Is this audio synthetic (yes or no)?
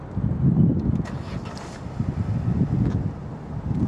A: no